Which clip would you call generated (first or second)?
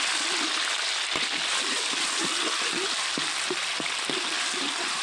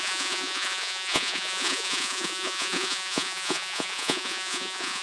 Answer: second